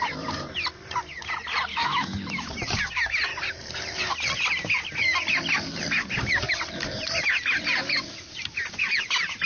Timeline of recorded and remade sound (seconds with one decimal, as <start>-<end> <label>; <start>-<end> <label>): 0.0-1.7 recorded; 1.7-2.5 remade; 2.5-9.4 recorded